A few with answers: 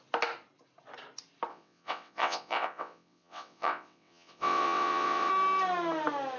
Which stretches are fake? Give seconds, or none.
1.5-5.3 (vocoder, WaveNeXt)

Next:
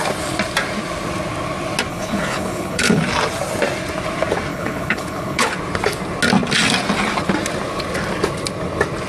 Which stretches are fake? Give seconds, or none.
1.9-3.0 (codec, HILCodec); 4.5-5.5

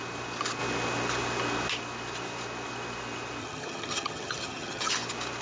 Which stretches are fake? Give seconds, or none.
3.4-4.9 (vocoder, HiFi-GAN)

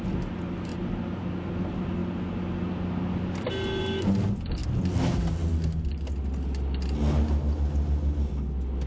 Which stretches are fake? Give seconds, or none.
none

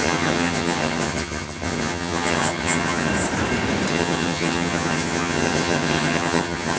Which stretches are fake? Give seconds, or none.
0.0-3.1 (vocoder, HiFi-GAN); 3.9-6.8

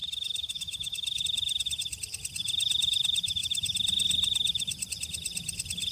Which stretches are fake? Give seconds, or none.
0.0-1.2 (autoencoder, DAC-VAE)